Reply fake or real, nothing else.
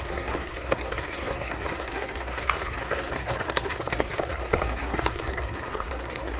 fake